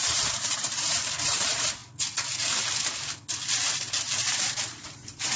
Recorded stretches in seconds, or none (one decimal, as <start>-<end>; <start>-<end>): 1.8-3.8